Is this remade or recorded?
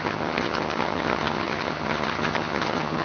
remade